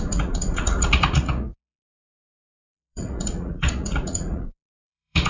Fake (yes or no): yes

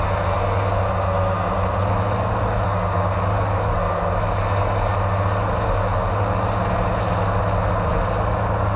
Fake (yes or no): no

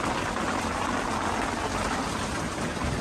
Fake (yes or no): no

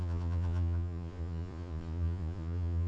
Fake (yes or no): yes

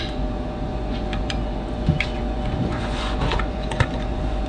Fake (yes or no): yes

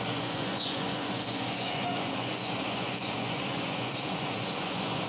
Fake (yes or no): yes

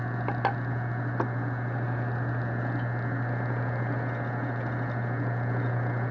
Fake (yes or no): no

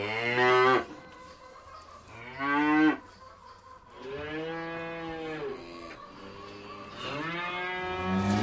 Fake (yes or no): no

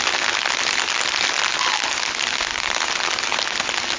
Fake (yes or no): no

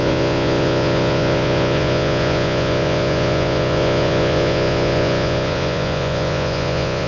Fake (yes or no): yes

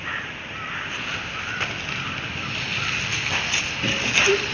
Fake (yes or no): no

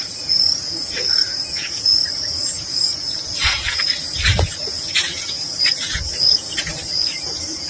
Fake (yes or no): yes